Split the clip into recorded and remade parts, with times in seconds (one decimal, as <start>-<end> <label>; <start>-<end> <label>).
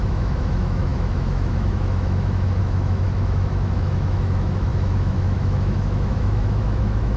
0.0-7.2 remade